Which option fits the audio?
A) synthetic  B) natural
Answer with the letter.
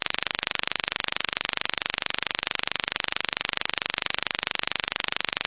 B